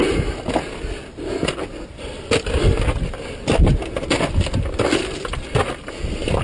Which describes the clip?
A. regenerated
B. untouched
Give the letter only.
B